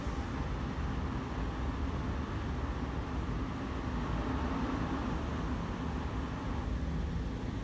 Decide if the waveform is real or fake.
real